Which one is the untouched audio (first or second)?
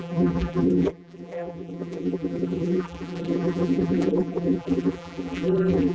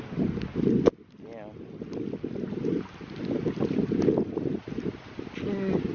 second